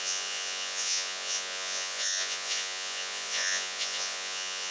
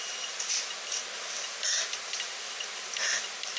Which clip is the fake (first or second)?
first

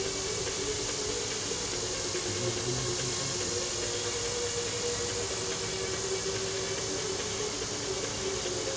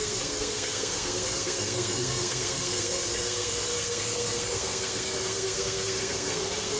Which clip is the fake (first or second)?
second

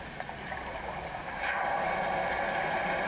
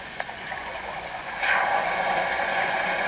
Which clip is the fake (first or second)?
second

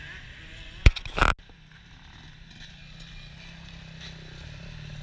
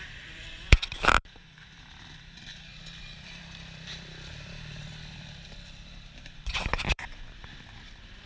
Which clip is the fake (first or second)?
second